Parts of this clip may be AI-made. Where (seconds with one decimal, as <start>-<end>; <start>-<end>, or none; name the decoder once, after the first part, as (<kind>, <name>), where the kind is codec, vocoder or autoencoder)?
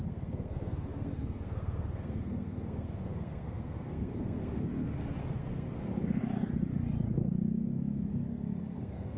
0.0-4.7 (codec, SNAC); 5.2-5.9; 7.6-9.2